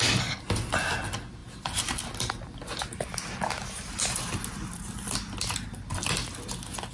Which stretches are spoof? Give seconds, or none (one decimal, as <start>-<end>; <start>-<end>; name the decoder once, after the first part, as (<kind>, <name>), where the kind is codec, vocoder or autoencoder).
none